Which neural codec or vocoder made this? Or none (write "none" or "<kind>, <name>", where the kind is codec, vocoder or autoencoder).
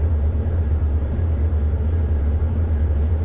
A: none